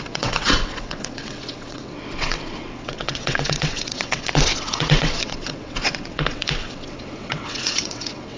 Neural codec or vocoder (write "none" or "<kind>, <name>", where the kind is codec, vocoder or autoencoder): vocoder, WaveNeXt